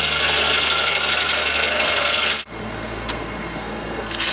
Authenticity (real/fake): fake